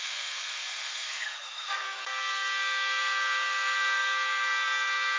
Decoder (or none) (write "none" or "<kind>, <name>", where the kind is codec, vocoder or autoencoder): codec, SNAC